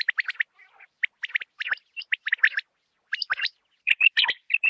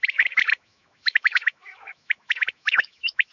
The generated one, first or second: second